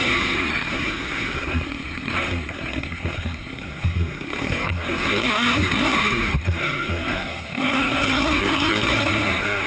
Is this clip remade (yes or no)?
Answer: yes